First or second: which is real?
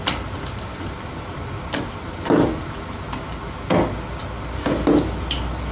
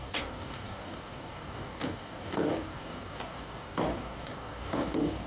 first